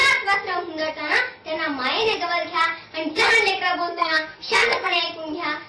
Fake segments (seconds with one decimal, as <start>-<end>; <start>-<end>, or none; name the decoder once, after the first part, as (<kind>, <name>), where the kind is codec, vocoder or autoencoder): 3.9-5.0 (codec, SNAC)